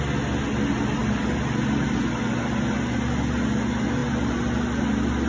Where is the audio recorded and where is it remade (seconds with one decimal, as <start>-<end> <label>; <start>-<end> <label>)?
0.0-5.3 recorded